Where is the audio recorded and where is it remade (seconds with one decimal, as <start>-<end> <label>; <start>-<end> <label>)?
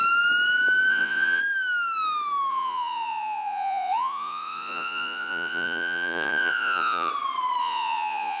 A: 0.0-0.9 recorded; 0.9-1.4 remade; 1.4-2.5 recorded; 2.5-7.1 remade; 7.1-7.6 recorded; 7.6-8.4 remade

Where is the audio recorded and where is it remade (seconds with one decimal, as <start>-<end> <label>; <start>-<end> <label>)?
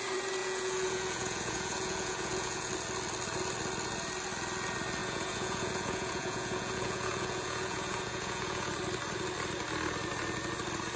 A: 0.0-0.4 recorded; 0.4-2.7 remade; 2.7-5.0 recorded; 5.0-8.7 remade; 8.7-11.0 recorded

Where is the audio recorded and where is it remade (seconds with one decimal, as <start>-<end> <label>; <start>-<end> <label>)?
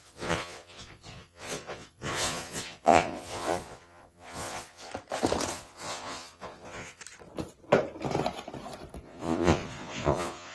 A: 0.0-4.9 remade; 4.9-5.5 recorded; 5.5-7.0 remade; 7.0-9.0 recorded; 9.0-10.5 remade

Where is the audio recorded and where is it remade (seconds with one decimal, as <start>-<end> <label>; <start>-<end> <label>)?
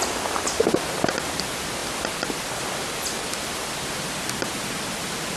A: 0.0-5.4 recorded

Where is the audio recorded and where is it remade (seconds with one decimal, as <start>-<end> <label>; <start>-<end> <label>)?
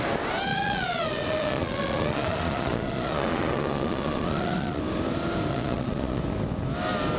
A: 0.0-0.5 recorded; 0.5-4.8 remade; 4.8-5.5 recorded; 5.5-6.2 remade; 6.2-7.2 recorded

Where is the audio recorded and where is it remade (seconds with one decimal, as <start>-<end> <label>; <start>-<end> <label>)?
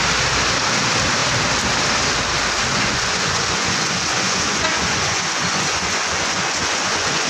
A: 0.0-2.7 recorded; 2.7-7.3 remade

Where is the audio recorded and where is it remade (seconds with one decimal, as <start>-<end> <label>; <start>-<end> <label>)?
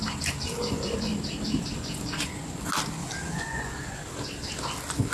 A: 0.0-0.7 recorded; 0.7-1.1 remade; 1.1-1.7 recorded; 1.7-2.7 remade; 2.7-3.3 recorded; 3.3-4.0 remade; 4.0-5.1 recorded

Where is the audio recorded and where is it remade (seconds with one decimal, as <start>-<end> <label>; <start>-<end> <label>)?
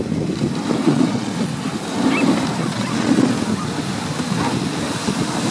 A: 0.0-0.8 recorded; 0.8-1.5 remade; 1.5-2.6 recorded; 2.6-3.3 remade; 3.3-5.5 recorded